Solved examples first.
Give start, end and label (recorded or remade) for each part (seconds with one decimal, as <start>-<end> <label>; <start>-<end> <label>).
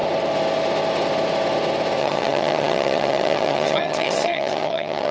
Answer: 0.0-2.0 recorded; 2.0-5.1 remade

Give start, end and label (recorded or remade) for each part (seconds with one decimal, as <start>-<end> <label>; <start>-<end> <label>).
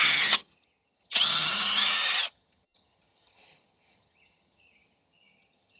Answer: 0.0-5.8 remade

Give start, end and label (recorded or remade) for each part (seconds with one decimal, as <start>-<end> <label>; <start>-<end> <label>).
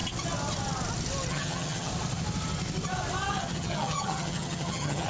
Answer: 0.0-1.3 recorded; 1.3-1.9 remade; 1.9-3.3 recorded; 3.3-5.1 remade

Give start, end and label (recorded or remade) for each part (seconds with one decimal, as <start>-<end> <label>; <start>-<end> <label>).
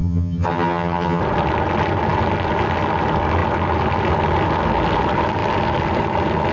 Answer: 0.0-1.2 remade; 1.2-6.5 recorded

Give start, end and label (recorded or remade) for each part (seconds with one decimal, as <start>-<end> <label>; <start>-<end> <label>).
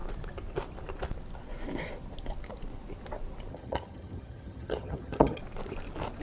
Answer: 0.0-3.5 recorded; 3.5-5.4 remade; 5.4-6.2 recorded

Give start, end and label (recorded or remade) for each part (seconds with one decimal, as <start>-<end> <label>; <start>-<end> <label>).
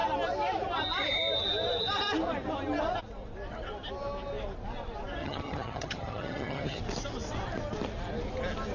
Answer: 0.0-5.2 recorded; 5.2-6.8 remade; 6.8-8.7 recorded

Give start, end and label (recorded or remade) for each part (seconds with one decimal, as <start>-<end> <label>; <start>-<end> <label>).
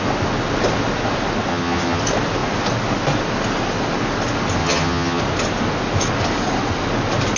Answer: 0.0-1.5 recorded; 1.5-2.0 remade; 2.0-4.6 recorded; 4.6-5.2 remade; 5.2-7.4 recorded